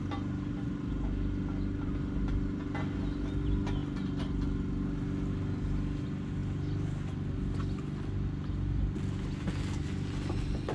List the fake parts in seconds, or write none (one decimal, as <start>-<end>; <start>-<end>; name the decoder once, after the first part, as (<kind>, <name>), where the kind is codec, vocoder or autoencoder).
none